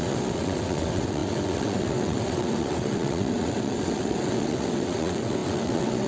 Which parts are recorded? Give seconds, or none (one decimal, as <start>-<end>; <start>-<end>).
none